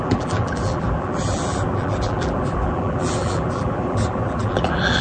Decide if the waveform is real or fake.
fake